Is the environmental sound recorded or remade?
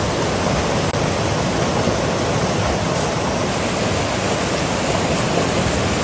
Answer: recorded